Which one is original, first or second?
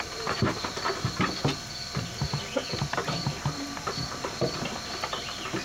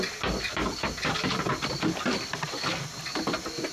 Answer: second